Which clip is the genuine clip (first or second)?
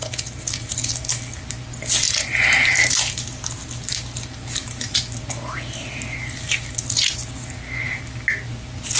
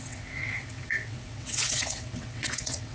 first